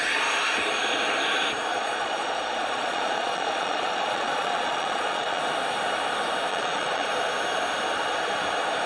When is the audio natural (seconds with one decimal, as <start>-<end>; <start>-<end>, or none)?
0.0-1.7; 5.4-6.5; 7.1-8.9